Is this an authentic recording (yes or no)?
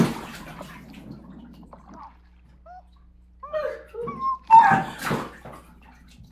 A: yes